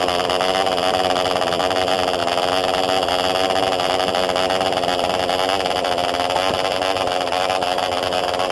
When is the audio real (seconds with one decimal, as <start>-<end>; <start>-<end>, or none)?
2.2-3.6